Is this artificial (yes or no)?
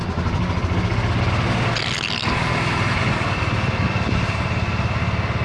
no